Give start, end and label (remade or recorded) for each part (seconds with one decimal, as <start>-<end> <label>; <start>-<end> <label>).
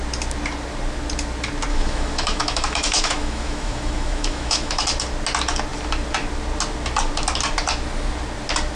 0.0-1.7 recorded; 1.7-4.8 remade; 4.8-8.7 recorded